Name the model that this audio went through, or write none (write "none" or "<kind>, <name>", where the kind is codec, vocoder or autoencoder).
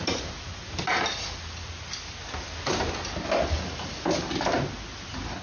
none